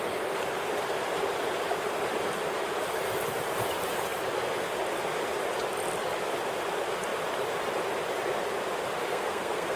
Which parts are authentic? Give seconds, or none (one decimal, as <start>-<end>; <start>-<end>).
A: 0.0-9.1